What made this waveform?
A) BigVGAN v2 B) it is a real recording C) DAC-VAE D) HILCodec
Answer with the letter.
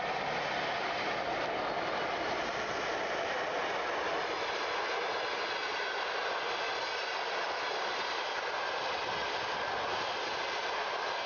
B